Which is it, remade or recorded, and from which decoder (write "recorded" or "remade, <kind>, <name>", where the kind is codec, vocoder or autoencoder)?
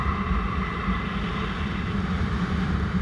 remade, vocoder, BigVGAN v2